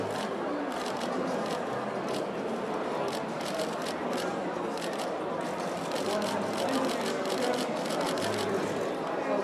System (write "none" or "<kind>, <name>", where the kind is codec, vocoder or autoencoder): none